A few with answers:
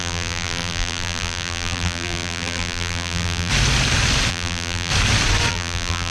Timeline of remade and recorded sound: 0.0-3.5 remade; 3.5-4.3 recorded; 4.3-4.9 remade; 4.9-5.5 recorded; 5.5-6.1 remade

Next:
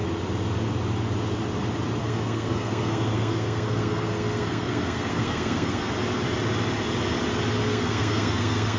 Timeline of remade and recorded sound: 0.0-2.0 recorded; 2.0-5.9 remade; 5.9-7.7 recorded; 7.7-8.8 remade